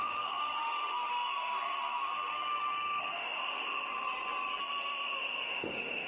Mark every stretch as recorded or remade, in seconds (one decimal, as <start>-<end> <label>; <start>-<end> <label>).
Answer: 0.0-3.9 remade; 3.9-4.6 recorded; 4.6-6.1 remade